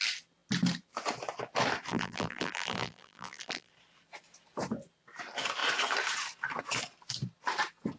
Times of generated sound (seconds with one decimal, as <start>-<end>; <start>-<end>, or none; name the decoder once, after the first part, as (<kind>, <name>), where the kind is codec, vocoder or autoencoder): 1.9-3.7 (vocoder, BigVGAN v2)